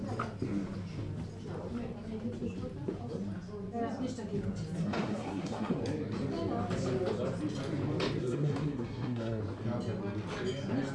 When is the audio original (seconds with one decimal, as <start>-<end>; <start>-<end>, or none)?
0.0-4.8; 5.8-8.2; 9.4-10.9